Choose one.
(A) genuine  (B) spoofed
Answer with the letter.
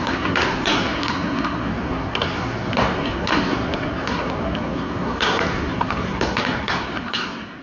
B